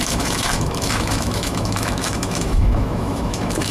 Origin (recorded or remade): remade